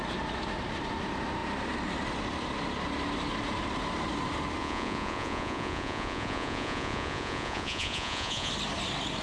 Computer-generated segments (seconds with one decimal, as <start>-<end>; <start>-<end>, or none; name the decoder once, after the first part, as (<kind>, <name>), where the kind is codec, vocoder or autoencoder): 4.6-8.5 (vocoder, Vocos)